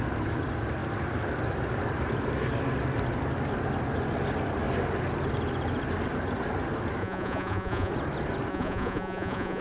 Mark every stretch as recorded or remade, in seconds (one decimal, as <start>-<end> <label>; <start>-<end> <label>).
0.0-7.0 recorded; 7.0-7.9 remade; 7.9-8.5 recorded; 8.5-9.6 remade